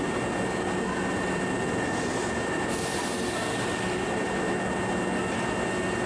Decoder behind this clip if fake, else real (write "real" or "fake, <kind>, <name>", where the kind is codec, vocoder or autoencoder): real